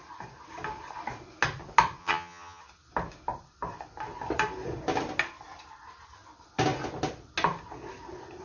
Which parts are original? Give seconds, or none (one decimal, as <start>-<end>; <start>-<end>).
0.0-2.0; 2.6-8.4